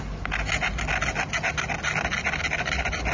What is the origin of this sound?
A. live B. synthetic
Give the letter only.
A